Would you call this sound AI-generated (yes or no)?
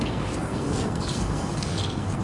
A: yes